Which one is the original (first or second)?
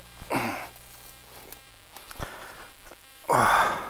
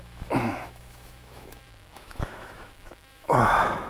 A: first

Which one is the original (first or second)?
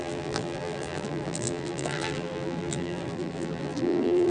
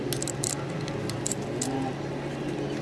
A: second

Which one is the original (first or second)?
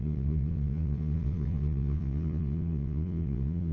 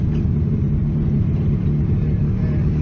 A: second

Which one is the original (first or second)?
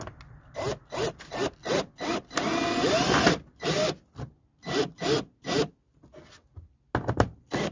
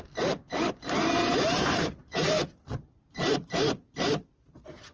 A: first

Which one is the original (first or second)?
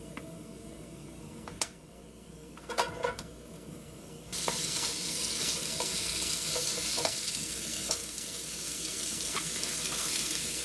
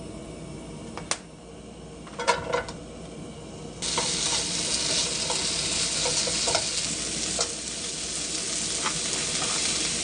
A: second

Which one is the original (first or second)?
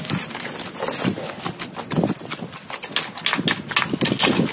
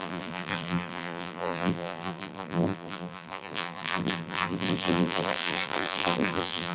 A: first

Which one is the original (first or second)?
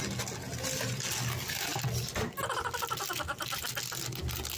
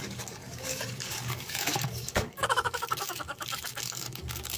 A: first